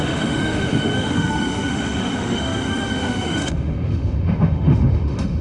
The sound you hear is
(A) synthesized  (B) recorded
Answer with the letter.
A